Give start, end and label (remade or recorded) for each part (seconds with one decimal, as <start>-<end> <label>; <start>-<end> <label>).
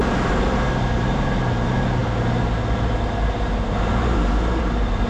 0.0-5.1 recorded